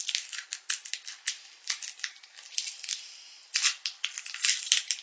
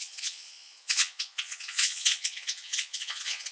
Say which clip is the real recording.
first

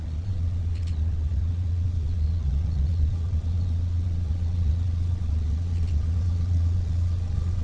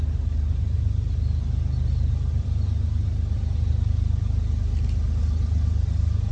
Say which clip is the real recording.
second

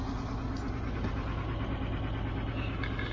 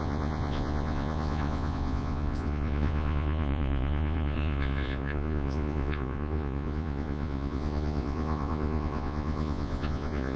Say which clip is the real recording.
first